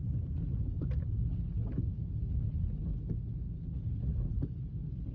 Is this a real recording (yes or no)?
yes